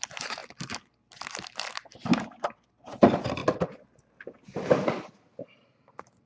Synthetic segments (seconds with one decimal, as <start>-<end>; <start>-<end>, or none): none